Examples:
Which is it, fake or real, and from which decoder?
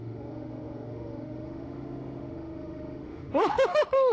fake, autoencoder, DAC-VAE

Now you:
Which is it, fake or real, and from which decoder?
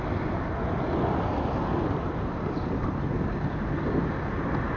real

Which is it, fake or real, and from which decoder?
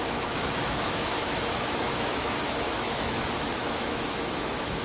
fake, autoencoder, DAC-VAE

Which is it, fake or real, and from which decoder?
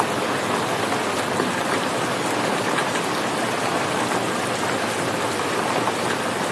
real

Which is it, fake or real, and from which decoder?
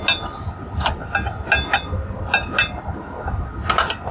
real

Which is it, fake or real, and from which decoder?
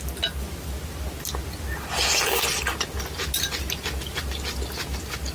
real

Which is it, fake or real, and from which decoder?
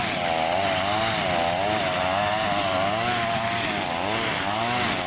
real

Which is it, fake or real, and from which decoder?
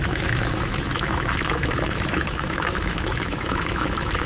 fake, autoencoder, DAC-VAE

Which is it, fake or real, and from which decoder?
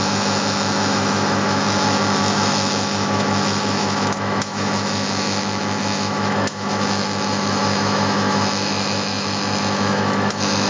fake, autoencoder, DAC-VAE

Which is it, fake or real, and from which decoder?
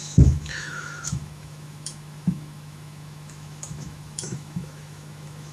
fake, autoencoder, DAC-VAE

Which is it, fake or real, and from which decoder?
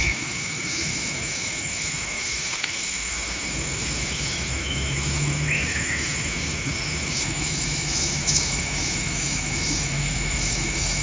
fake, autoencoder, DAC-VAE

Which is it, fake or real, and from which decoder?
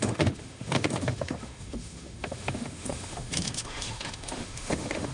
fake, autoencoder, DAC-VAE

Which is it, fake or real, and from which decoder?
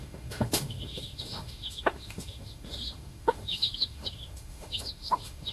fake, autoencoder, DAC-VAE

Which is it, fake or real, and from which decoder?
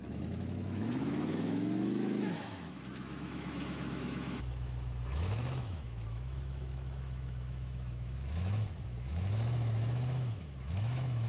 fake, autoencoder, DAC-VAE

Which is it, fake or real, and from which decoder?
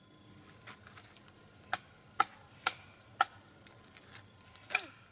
real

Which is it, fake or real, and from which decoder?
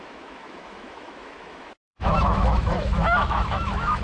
fake, autoencoder, DAC-VAE